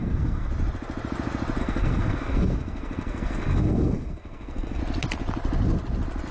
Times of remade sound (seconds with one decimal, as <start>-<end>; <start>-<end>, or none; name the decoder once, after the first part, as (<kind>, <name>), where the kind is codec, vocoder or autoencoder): 0.0-0.5 (codec, SNAC); 1.6-4.8